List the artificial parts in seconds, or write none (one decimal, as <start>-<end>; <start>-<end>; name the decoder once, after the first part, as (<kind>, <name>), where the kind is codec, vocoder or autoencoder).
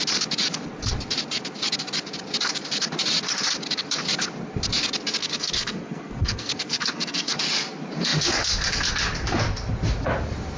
5.2-7.3 (codec, SNAC)